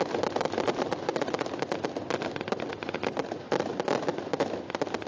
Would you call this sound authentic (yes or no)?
yes